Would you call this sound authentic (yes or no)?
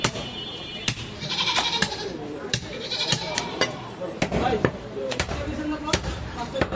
no